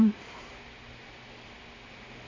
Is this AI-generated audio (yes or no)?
no